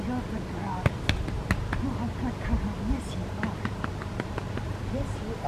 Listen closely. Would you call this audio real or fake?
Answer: real